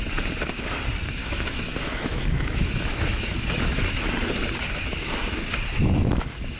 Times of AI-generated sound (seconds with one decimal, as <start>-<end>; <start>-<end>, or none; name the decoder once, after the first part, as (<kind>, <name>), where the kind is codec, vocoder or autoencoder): 1.2-3.8 (autoencoder, DAC-VAE); 5.8-6.6